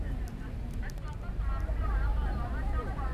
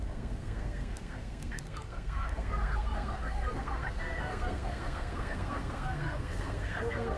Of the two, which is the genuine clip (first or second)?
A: first